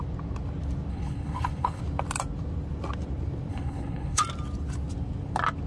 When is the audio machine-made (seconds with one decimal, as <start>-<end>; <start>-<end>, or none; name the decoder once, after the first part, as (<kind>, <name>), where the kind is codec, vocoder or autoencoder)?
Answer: 0.9-1.8 (codec, HILCodec); 3.5-4.2